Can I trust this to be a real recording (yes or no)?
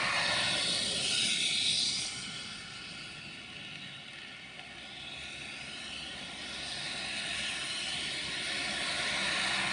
yes